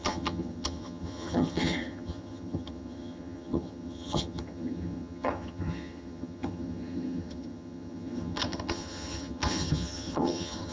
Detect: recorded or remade remade